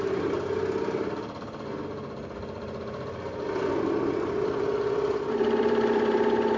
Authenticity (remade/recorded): remade